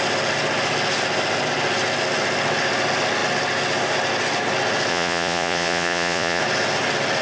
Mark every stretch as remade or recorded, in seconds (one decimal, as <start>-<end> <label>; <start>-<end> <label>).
0.0-4.9 recorded; 4.9-6.4 remade; 6.4-7.2 recorded